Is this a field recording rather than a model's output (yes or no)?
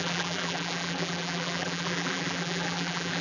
no